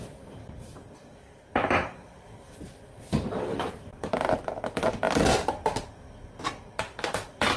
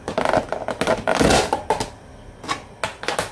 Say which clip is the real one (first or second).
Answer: second